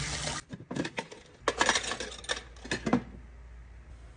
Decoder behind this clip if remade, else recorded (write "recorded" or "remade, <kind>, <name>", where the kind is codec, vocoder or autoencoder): recorded